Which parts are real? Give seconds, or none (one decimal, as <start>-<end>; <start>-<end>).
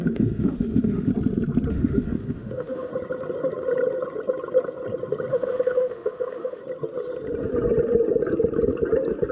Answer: 1.1-1.7; 2.9-5.3; 6.6-9.3